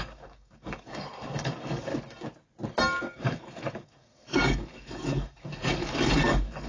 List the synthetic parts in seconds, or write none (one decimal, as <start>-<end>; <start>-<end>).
0.0-1.9; 3.0-6.7